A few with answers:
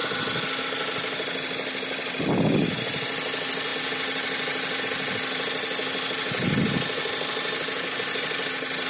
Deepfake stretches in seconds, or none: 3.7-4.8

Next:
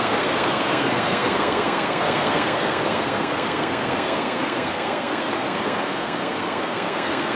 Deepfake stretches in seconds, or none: 0.0-7.4

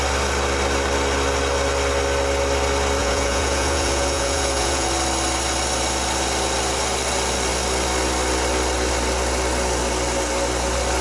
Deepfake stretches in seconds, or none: 3.0-4.9

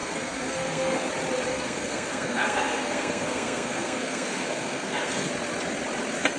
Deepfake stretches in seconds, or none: 0.0-1.1; 1.5-5.3

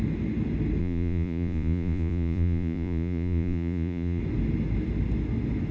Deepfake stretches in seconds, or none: 0.8-4.2